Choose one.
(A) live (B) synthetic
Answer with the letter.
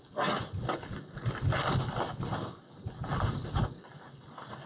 A